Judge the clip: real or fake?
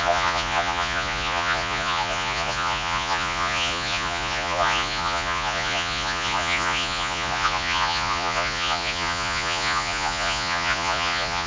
fake